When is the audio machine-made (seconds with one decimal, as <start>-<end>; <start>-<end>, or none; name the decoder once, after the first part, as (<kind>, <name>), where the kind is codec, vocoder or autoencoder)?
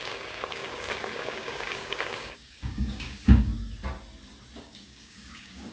0.0-3.5 (codec, DAC); 4.6-5.7